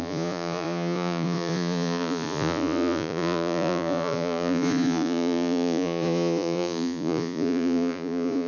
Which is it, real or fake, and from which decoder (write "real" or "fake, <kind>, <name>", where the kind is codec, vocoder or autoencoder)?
fake, vocoder, Vocos